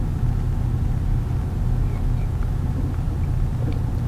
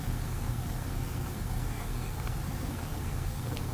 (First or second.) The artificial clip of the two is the second